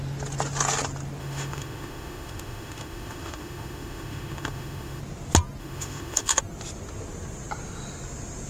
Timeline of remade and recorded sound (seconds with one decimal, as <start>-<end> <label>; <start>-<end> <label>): 0.0-1.2 recorded; 1.2-5.0 remade; 5.0-5.6 recorded; 5.6-6.4 remade; 6.4-8.5 recorded